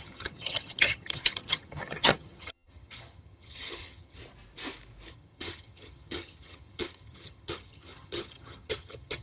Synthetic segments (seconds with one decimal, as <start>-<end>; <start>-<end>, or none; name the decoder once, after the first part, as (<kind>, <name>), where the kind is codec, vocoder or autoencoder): 0.0-4.2 (vocoder, HiFi-GAN); 5.1-9.2